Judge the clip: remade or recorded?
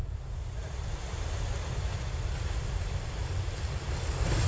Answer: recorded